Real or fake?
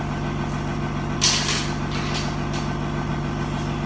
real